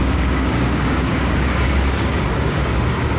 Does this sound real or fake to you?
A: fake